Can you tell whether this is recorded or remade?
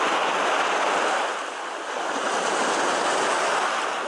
recorded